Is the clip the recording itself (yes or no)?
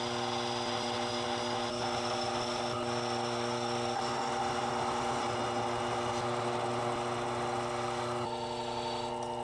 yes